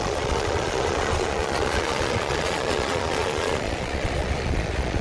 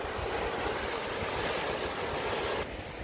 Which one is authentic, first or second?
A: second